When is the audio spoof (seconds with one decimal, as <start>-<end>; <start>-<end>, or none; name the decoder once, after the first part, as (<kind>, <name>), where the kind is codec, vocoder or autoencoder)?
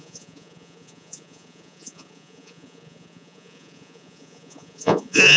0.0-5.4 (vocoder, Vocos)